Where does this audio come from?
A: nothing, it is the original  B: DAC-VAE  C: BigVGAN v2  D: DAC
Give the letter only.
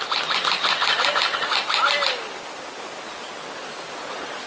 A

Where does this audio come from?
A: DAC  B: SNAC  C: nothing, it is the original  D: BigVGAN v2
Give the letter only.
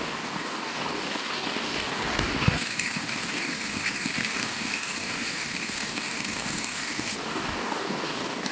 A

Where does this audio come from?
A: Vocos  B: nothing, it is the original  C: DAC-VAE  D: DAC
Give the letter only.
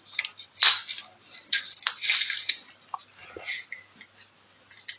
B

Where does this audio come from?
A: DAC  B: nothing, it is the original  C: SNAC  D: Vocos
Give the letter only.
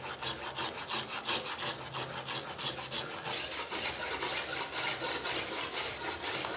B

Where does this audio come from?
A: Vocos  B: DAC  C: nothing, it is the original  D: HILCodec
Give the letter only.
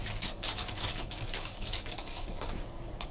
B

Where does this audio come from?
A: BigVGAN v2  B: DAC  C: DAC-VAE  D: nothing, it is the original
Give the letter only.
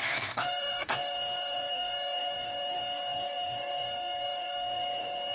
B